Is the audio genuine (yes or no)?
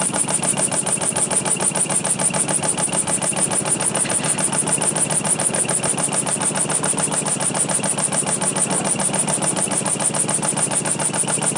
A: yes